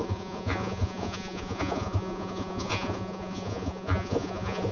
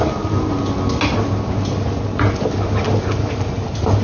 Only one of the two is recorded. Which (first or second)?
second